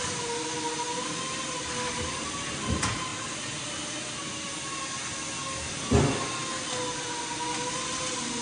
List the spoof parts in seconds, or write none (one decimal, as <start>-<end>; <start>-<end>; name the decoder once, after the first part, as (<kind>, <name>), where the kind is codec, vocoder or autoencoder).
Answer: none